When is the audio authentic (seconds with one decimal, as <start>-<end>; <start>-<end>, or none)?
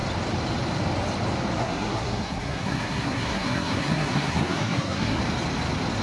0.0-1.6; 5.2-6.0